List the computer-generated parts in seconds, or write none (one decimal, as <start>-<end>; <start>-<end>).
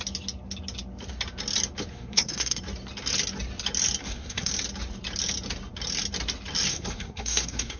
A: 1.9-2.6; 4.0-4.5; 6.7-7.8